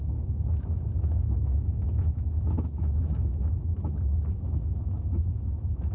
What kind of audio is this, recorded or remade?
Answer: remade